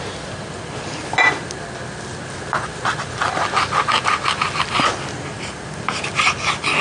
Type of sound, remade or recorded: recorded